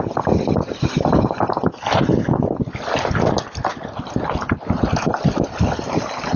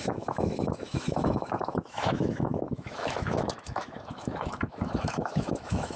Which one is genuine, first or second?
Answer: first